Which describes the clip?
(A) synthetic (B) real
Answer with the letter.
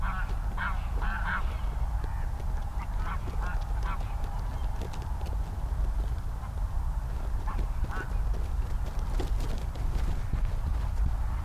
B